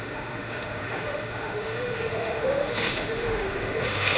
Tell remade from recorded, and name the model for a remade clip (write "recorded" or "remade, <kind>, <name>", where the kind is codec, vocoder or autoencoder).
remade, autoencoder, DAC-VAE